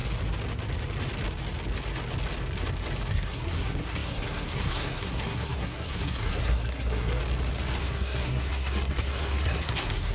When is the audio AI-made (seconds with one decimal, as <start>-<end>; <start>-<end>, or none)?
3.1-7.2; 7.8-10.1